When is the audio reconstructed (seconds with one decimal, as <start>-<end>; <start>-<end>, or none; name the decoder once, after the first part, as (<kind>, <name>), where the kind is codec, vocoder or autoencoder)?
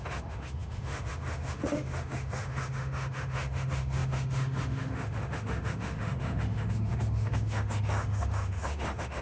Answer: 0.0-9.2 (autoencoder, DAC-VAE)